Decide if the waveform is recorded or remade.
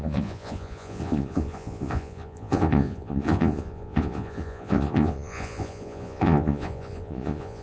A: remade